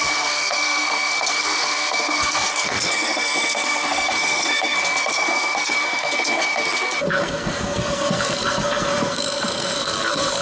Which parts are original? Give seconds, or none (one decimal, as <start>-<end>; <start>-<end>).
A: none